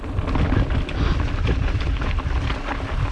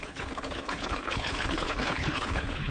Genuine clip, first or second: first